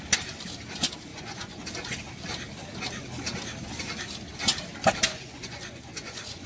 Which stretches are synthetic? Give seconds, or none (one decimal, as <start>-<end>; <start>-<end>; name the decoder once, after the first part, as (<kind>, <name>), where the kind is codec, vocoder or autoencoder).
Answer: 1.1-1.6 (vocoder, Vocos); 5.1-6.5